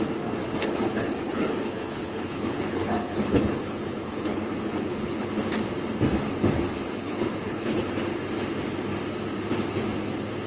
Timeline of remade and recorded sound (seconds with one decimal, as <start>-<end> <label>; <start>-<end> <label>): 0.0-0.6 recorded; 0.6-5.3 remade; 5.3-7.0 recorded; 7.0-7.9 remade; 7.9-10.5 recorded